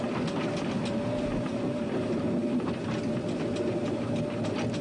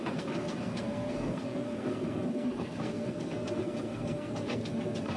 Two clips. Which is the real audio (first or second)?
first